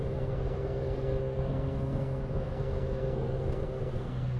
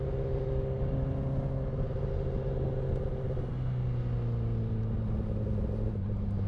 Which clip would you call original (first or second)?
second